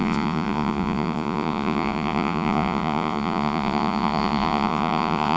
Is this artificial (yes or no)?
yes